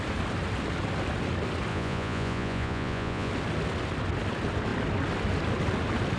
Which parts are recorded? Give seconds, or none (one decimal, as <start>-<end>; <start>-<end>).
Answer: 0.0-1.7; 3.3-6.2